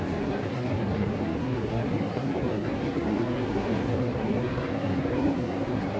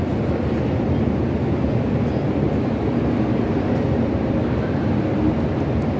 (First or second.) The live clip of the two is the second